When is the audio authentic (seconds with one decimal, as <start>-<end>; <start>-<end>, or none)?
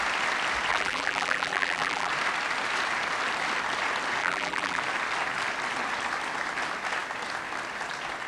0.0-0.7; 2.1-4.2; 4.8-8.3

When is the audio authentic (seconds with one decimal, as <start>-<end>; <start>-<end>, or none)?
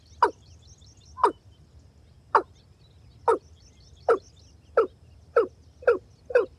0.0-6.6